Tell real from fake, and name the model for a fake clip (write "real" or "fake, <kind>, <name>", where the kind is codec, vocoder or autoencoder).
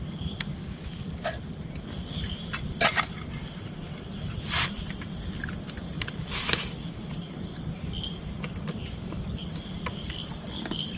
real